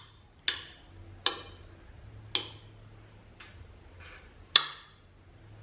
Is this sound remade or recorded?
recorded